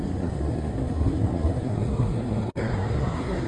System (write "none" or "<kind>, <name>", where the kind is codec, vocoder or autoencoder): codec, SNAC